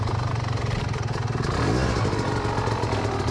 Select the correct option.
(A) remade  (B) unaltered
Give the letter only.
B